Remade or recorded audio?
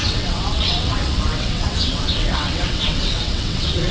remade